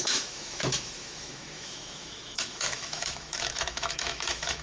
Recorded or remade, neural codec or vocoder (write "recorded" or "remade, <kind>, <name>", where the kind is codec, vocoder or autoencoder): remade, autoencoder, DAC-VAE